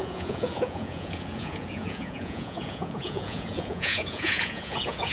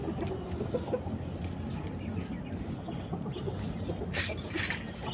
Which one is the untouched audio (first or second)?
second